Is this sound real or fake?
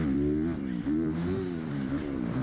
fake